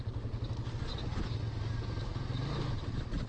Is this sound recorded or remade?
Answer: recorded